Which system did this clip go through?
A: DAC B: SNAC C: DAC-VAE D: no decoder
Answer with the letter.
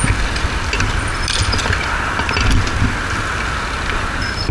D